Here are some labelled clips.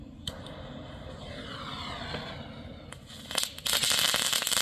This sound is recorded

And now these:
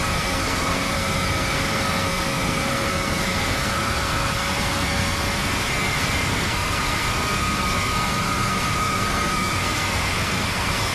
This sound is remade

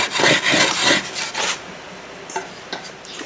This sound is recorded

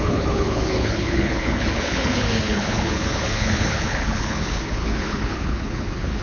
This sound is remade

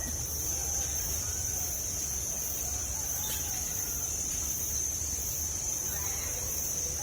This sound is remade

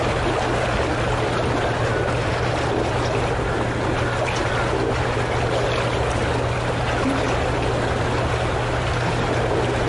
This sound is recorded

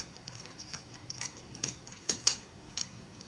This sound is remade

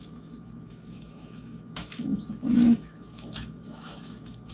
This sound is remade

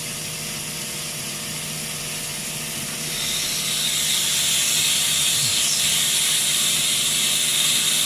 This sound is recorded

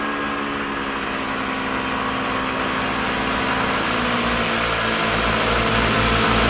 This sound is recorded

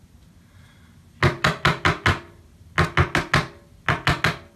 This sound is recorded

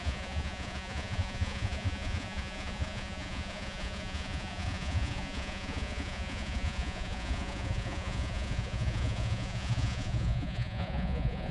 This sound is remade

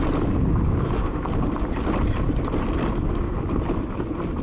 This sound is recorded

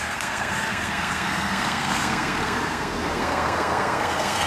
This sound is remade